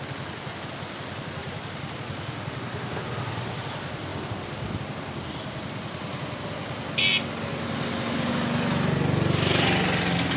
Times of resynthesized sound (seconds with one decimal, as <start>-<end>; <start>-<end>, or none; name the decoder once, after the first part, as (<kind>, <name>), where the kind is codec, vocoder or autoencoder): 1.4-2.0 (vocoder, BigVGAN v2)